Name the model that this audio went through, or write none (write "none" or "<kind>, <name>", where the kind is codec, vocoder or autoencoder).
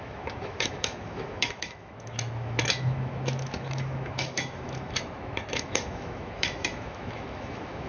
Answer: autoencoder, DAC-VAE